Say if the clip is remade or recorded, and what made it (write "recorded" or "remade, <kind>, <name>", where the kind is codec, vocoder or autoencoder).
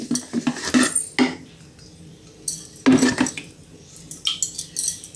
recorded